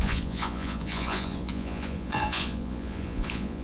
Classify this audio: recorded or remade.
remade